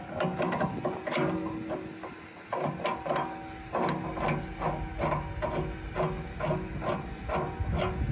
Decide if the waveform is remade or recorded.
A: recorded